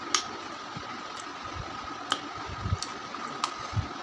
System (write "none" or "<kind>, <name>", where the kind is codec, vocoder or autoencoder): none